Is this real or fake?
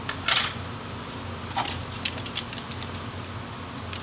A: real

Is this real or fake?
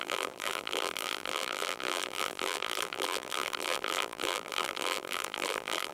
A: fake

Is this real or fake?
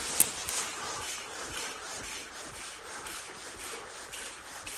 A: fake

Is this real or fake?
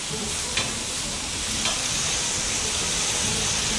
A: fake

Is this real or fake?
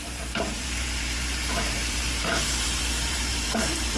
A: fake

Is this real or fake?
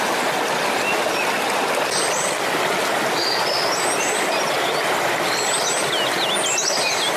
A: real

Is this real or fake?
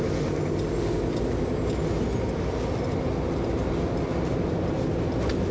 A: real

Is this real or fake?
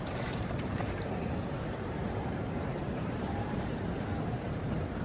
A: fake